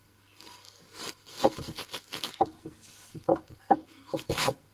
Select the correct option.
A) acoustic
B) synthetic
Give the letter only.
B